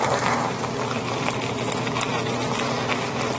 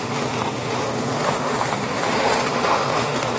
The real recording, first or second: first